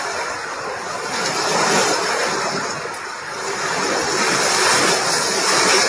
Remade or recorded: recorded